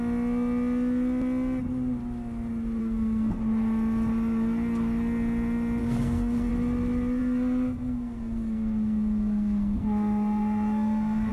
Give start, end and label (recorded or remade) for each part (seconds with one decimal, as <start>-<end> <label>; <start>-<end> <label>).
0.0-2.8 recorded; 2.8-3.4 remade; 3.4-5.8 recorded; 5.8-6.5 remade; 6.5-7.2 recorded; 7.2-11.3 remade